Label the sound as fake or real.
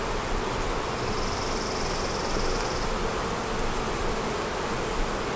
real